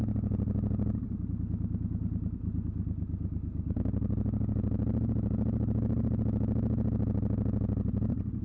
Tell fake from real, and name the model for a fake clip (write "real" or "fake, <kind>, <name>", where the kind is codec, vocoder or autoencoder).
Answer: real